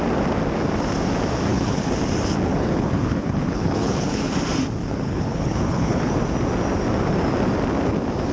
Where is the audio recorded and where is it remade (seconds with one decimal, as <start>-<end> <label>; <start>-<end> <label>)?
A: 0.0-1.5 recorded; 1.5-2.0 remade; 2.0-2.5 recorded; 2.5-4.3 remade; 4.3-4.8 recorded; 4.8-6.1 remade; 6.1-8.3 recorded